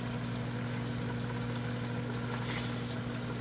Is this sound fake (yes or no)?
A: no